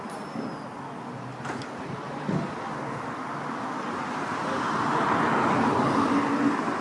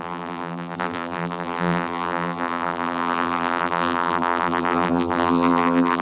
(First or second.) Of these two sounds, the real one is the first